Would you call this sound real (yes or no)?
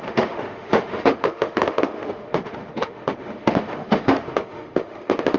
no